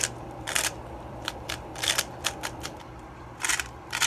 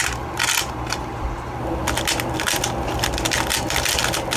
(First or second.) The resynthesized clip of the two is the first